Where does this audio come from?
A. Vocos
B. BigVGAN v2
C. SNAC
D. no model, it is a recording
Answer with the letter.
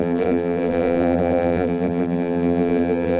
B